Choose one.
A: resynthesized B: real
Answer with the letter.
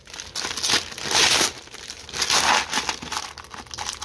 B